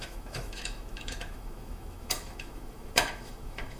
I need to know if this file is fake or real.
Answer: fake